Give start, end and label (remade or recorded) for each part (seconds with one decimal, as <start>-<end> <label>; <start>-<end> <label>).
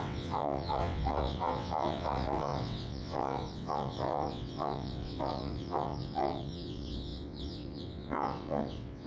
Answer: 0.0-9.1 remade